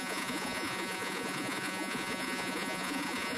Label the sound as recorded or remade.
remade